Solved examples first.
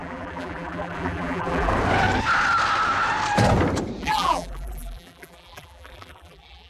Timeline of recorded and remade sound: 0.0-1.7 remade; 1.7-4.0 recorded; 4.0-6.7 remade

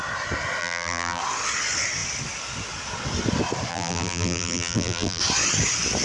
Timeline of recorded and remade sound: 0.0-0.6 recorded; 0.6-1.2 remade; 1.2-3.7 recorded; 3.7-5.2 remade; 5.2-6.0 recorded

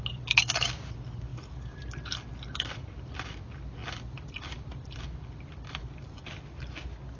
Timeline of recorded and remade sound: 0.0-1.3 recorded; 1.3-1.8 remade; 1.8-3.8 recorded; 3.8-5.0 remade; 5.0-5.8 recorded; 5.8-6.6 remade; 6.6-7.2 recorded

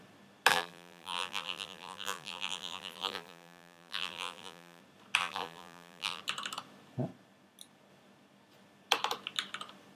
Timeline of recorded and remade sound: 0.0-0.5 recorded; 0.5-4.8 remade; 4.8-5.2 recorded; 5.2-6.2 remade; 6.2-10.0 recorded

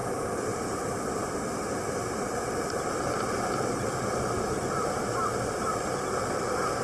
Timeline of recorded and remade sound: 0.0-1.1 remade; 1.1-6.8 recorded

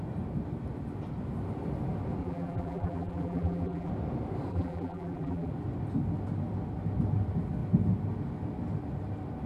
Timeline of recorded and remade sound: 0.0-2.2 recorded; 2.2-3.9 remade; 3.9-4.5 recorded; 4.5-5.5 remade; 5.5-9.5 recorded